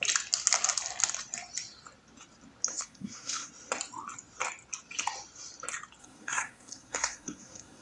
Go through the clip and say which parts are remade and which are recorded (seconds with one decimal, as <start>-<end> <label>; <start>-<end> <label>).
0.0-2.7 recorded; 2.7-3.5 remade; 3.5-6.0 recorded; 6.0-7.8 remade